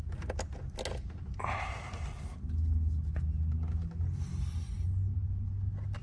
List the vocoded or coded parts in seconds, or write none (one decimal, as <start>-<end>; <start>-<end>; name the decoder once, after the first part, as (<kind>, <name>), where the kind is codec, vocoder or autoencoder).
none